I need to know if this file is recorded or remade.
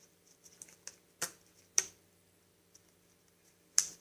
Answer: remade